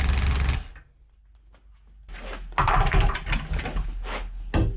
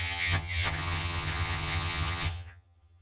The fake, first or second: second